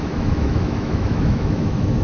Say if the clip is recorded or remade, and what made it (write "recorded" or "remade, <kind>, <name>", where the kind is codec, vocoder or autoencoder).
remade, autoencoder, DAC-VAE